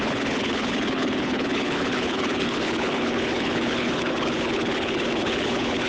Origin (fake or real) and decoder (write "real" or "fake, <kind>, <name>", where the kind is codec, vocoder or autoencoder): fake, codec, HILCodec